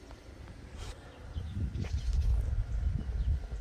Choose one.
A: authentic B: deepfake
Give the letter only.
A